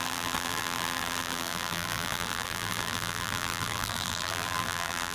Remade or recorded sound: remade